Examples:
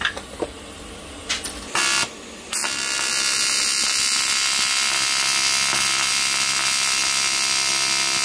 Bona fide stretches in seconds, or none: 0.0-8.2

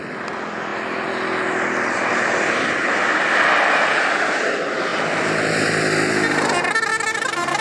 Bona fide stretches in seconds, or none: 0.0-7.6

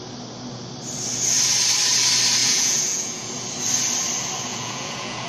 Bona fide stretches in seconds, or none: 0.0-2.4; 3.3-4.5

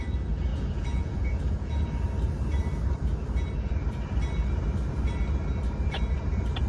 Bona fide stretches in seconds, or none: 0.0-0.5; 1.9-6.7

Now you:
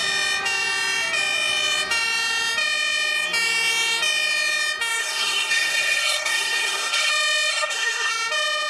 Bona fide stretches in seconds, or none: 0.0-5.0; 7.1-7.5; 8.1-8.7

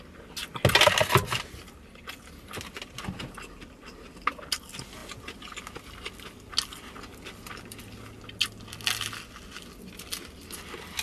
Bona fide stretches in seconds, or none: 0.0-11.0

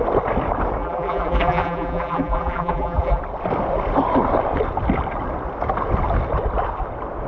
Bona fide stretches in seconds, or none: 0.0-0.8; 3.2-7.3

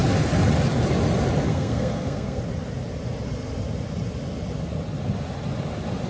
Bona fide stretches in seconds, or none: 0.0-1.5; 2.4-6.1